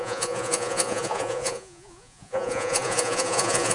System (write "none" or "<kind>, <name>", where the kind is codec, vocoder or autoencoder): vocoder, Vocos